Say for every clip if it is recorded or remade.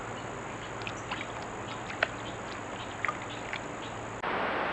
recorded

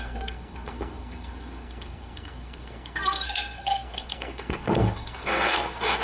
remade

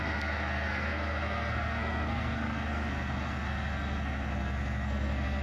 remade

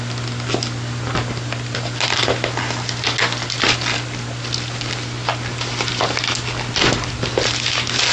recorded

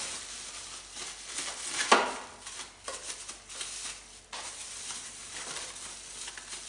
recorded